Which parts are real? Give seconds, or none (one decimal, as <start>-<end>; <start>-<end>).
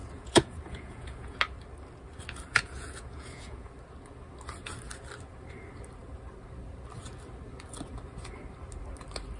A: 1.4-2.5; 3.7-9.4